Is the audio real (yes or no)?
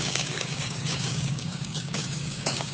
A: no